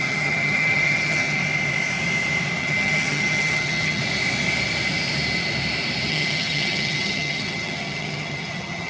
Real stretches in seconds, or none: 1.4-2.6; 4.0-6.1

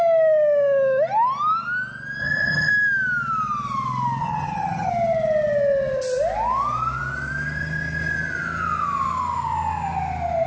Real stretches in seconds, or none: 0.0-2.2; 2.7-4.2; 4.9-10.5

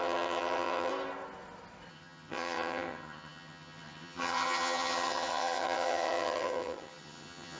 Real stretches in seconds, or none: 0.9-1.9